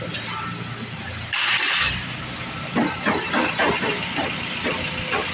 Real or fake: real